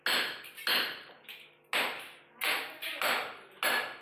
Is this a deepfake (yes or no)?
no